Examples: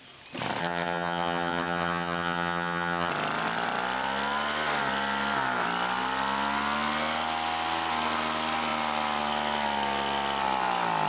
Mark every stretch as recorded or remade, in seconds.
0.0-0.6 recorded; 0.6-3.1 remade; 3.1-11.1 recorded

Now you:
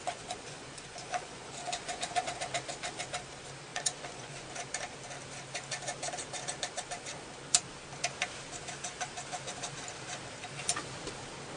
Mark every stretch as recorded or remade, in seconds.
0.0-2.2 remade; 2.2-3.7 recorded; 3.7-4.5 remade; 4.5-11.6 recorded

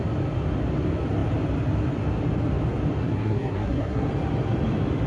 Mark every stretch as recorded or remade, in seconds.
0.0-3.0 recorded; 3.0-4.1 remade; 4.1-5.1 recorded

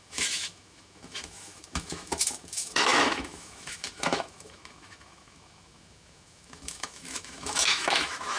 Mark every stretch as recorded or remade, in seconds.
0.0-8.4 remade

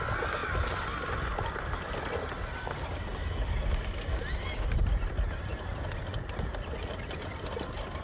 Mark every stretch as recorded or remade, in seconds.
0.0-8.0 recorded

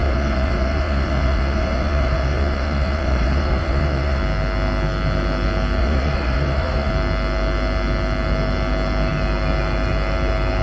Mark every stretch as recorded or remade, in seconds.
0.0-4.2 remade; 4.2-5.8 recorded; 5.8-6.9 remade; 6.9-10.6 recorded

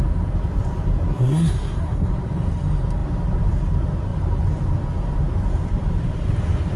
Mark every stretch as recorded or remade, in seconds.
0.0-1.1 recorded; 1.1-2.1 remade; 2.1-6.8 recorded